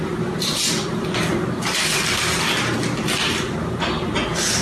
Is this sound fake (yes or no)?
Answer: no